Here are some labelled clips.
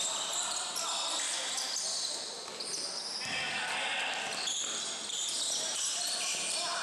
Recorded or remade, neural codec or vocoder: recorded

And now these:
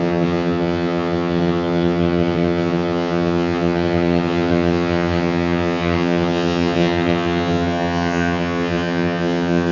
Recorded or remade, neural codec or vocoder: remade, vocoder, HiFi-GAN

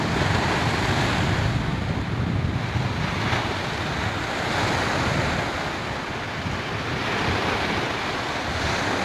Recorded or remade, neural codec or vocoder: recorded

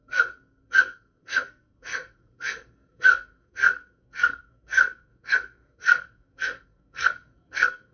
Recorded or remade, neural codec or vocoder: remade, codec, SNAC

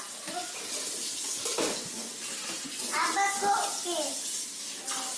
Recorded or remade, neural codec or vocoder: recorded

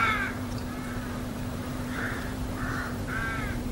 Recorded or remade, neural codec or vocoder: remade, vocoder, BigVGAN v2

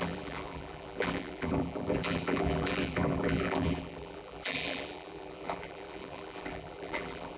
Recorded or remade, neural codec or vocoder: remade, vocoder, BigVGAN v2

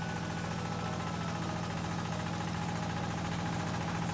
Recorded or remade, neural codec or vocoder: recorded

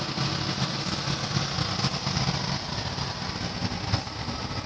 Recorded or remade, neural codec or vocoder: recorded